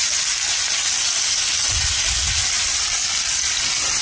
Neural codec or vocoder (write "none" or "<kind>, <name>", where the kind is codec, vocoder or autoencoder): none